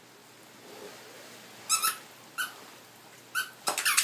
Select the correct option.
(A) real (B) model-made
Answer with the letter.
A